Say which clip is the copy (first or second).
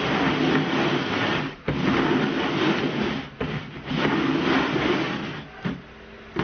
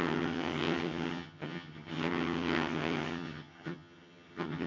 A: second